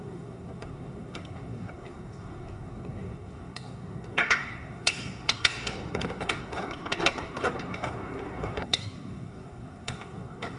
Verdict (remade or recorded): remade